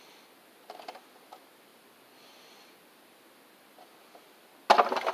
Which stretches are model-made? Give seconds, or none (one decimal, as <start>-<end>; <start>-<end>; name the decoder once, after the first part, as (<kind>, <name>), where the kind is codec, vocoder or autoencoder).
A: none